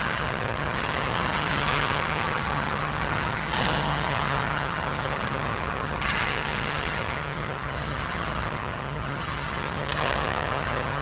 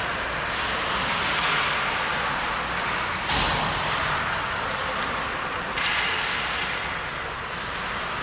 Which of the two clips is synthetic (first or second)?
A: first